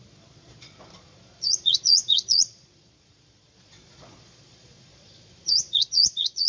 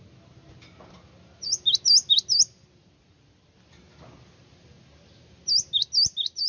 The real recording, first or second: second